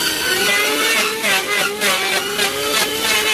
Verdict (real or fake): real